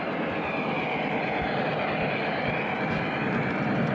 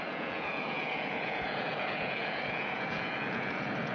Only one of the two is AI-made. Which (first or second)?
second